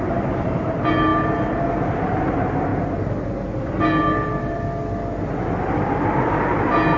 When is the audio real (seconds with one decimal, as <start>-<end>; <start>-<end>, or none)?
0.0-7.0